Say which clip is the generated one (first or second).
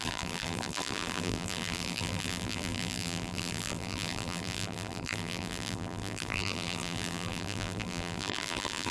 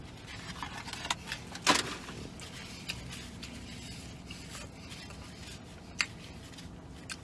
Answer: first